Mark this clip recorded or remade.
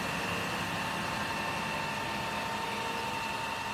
recorded